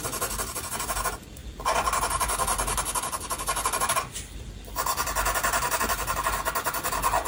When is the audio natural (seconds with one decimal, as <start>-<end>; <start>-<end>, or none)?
0.0-7.3